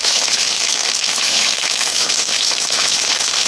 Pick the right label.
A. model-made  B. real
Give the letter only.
A